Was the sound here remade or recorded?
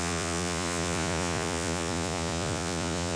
remade